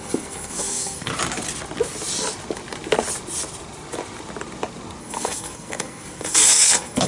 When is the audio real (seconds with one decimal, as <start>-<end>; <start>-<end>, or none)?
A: 1.1-5.0